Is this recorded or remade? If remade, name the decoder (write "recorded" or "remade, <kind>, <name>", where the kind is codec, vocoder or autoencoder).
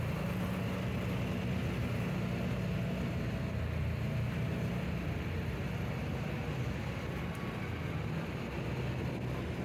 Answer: recorded